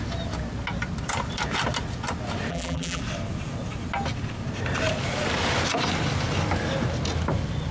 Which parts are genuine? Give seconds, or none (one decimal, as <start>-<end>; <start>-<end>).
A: 0.0-2.5; 3.0-7.7